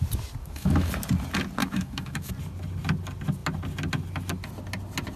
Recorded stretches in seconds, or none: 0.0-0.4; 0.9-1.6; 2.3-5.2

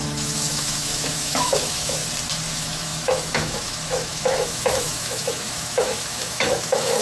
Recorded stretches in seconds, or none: 2.0-2.5

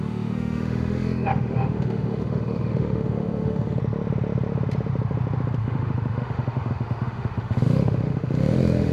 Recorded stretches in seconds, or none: 3.8-5.6